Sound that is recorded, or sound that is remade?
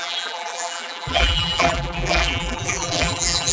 remade